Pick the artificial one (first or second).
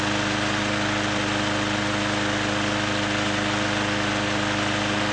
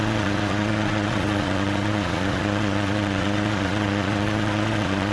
second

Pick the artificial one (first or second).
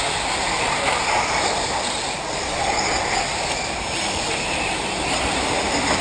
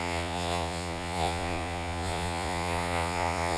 second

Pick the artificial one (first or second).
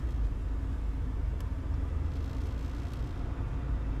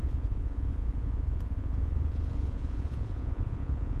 second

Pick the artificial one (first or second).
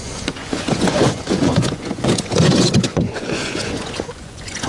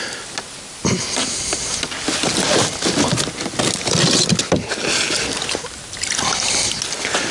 first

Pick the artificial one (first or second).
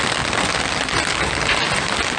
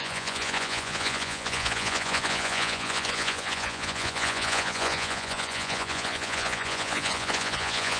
second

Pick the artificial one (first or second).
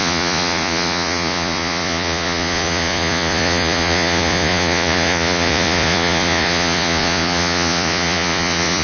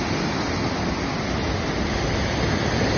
first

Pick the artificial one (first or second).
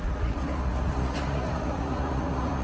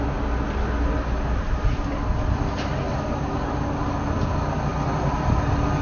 first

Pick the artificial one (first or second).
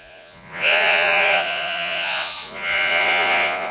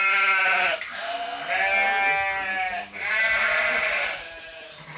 first